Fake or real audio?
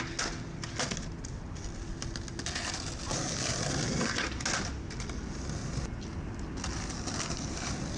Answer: real